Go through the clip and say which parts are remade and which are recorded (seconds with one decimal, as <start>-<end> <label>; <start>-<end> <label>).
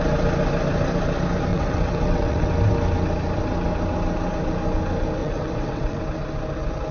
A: 0.0-1.5 recorded; 1.5-2.5 remade; 2.5-5.2 recorded; 5.2-6.0 remade; 6.0-6.9 recorded